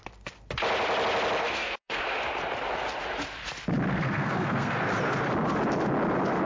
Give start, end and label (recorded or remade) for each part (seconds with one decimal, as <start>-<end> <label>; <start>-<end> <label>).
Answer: 0.0-1.4 recorded; 1.4-2.0 remade; 2.0-3.9 recorded; 3.9-4.8 remade; 4.8-6.4 recorded

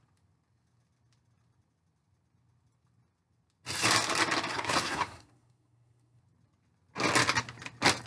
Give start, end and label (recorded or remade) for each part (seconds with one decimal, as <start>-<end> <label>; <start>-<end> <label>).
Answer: 0.0-4.5 recorded; 4.5-6.2 remade; 6.2-8.1 recorded

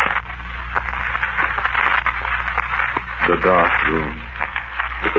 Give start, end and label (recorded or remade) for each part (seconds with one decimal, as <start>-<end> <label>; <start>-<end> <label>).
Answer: 0.0-4.3 recorded; 4.3-5.2 remade